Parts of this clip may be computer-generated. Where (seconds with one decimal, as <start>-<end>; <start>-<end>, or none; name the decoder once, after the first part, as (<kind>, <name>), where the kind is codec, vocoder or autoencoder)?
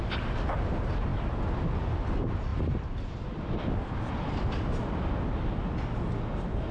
none